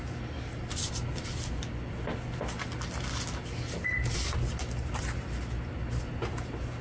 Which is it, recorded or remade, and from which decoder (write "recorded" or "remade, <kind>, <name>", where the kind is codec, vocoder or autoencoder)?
recorded